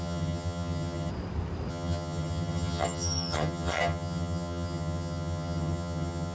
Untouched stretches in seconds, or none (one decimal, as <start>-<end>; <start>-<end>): 1.1-1.7